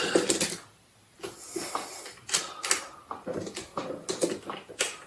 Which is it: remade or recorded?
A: recorded